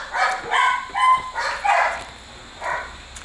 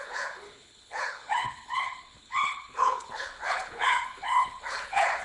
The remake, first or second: second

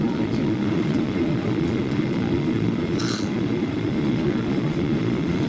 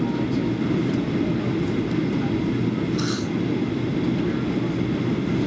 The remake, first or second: first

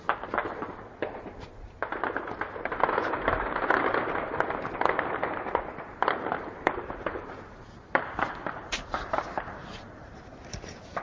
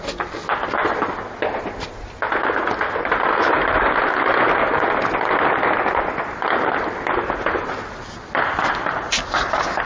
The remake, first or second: first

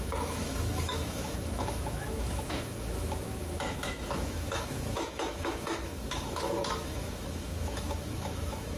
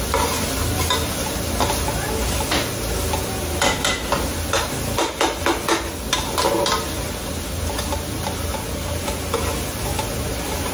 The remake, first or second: first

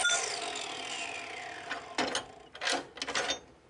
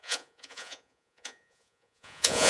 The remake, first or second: second